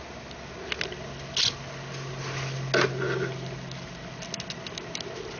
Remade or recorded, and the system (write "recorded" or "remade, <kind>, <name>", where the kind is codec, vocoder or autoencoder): recorded